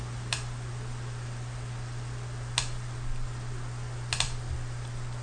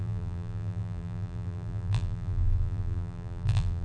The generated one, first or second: second